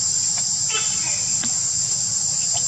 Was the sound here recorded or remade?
remade